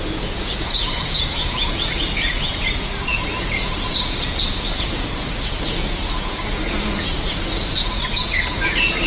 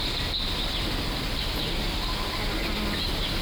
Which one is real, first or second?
second